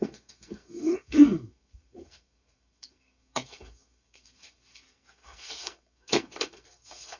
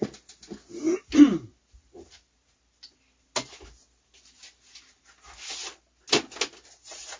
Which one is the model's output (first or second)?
first